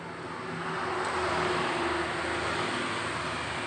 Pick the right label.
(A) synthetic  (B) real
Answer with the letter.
B